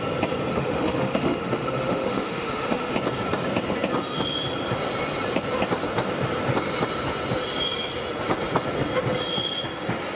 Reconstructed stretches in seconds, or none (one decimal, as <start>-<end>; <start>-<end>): 0.5-2.9